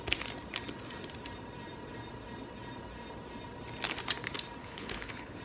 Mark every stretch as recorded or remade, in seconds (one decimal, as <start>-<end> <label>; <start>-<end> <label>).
0.0-4.6 recorded; 4.6-5.4 remade

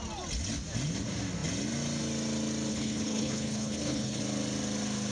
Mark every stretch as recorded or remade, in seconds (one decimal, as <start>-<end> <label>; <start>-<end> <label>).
0.0-2.7 recorded; 2.7-4.2 remade; 4.2-5.1 recorded

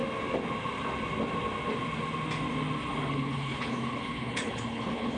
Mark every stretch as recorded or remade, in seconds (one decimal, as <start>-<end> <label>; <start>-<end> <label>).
0.0-3.1 recorded; 3.1-5.2 remade

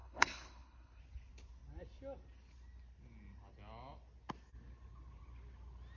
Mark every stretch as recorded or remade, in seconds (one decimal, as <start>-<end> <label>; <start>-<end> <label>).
0.0-1.0 remade; 1.0-6.0 recorded

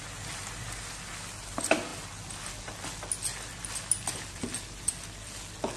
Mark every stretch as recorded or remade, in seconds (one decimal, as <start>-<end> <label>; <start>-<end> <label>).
0.0-5.8 recorded

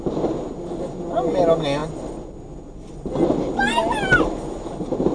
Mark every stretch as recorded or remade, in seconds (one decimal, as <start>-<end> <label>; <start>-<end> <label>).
0.0-5.1 recorded

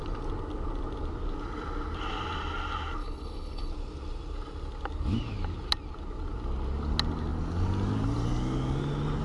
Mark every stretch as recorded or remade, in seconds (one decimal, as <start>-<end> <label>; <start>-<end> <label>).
0.0-3.0 recorded; 3.0-3.7 remade; 3.7-9.2 recorded